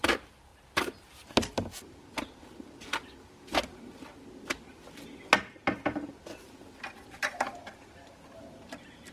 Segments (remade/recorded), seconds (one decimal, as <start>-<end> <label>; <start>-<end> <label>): 0.0-9.1 recorded